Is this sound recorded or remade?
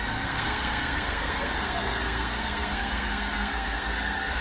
remade